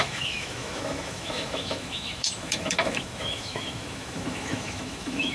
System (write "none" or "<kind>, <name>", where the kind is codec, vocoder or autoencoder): autoencoder, DAC-VAE